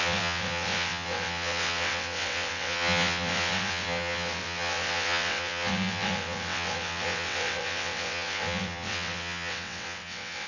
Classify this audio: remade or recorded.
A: remade